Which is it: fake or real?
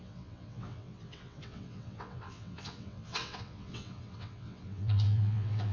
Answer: fake